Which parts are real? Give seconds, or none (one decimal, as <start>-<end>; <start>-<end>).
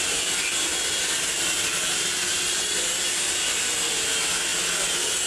4.5-5.3